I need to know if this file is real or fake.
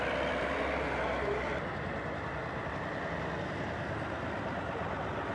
fake